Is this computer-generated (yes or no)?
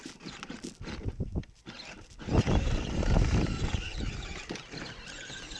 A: no